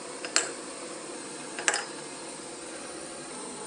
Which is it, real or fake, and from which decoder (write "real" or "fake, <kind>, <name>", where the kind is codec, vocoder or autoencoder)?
real